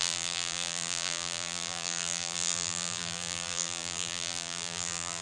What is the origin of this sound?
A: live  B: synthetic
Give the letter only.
B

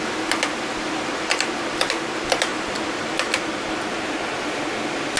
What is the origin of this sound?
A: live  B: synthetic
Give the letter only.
A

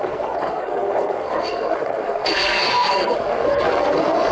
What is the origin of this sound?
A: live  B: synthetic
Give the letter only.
B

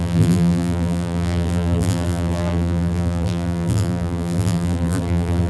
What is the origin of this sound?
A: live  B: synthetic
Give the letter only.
B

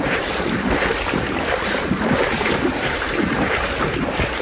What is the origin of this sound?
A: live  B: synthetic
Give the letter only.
B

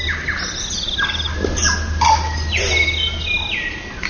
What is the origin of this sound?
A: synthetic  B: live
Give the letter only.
B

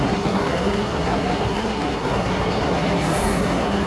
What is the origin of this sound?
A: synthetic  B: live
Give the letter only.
A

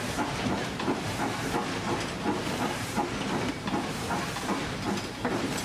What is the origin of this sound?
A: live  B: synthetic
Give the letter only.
B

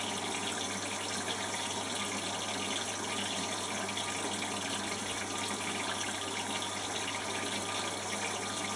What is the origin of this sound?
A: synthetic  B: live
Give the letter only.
B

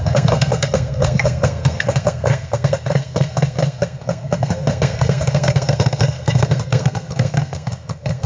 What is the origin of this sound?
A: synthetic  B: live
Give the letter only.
A